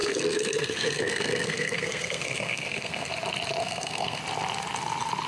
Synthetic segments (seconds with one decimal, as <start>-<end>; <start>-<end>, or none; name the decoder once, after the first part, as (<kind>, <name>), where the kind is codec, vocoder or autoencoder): 0.0-3.1 (codec, SNAC); 3.6-4.2